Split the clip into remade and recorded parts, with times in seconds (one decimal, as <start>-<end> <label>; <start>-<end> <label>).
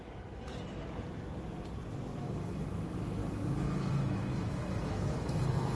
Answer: 0.0-0.5 remade; 0.5-2.2 recorded; 2.2-5.8 remade